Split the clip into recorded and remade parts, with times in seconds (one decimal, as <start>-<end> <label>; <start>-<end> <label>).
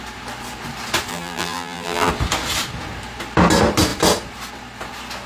0.0-1.1 recorded; 1.1-2.1 remade; 2.1-5.3 recorded